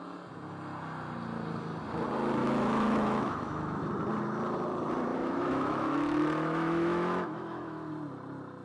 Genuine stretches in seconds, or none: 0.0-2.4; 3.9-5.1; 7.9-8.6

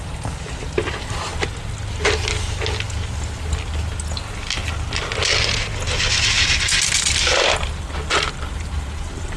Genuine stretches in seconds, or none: 0.0-9.4

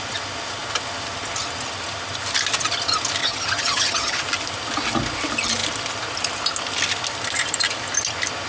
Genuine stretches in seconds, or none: 0.0-3.2; 4.2-8.5

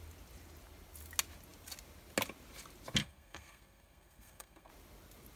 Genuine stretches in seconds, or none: 0.0-3.0; 4.7-5.4

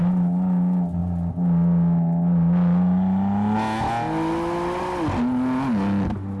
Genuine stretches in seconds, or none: 0.0-6.4